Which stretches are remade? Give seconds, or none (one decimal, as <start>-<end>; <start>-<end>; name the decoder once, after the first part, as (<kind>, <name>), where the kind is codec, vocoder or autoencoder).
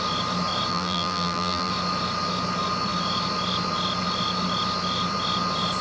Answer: 0.7-1.7 (vocoder, BigVGAN v2)